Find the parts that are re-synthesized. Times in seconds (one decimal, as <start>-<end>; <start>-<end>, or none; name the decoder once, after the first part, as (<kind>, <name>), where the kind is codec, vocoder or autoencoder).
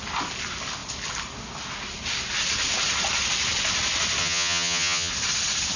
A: 4.2-5.1 (vocoder, HiFi-GAN)